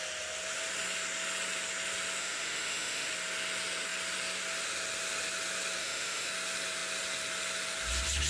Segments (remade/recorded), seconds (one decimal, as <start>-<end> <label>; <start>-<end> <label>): 0.0-2.2 recorded; 2.2-3.1 remade; 3.1-5.8 recorded; 5.8-6.3 remade; 6.3-8.3 recorded